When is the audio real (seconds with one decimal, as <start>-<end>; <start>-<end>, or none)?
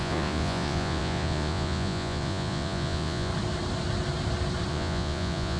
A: 3.3-4.7